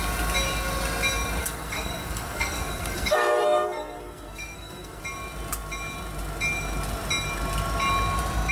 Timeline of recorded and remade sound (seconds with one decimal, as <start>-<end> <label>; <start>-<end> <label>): 0.0-1.4 recorded; 1.4-5.0 remade; 5.0-8.5 recorded